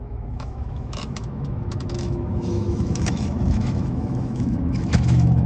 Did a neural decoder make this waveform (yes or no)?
yes